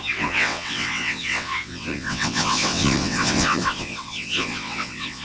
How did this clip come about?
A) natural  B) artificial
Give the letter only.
B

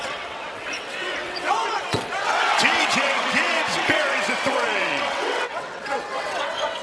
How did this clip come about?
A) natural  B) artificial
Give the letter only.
B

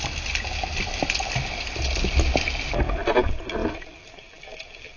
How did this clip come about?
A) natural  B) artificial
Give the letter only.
A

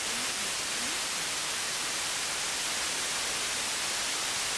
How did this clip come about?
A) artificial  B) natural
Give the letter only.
B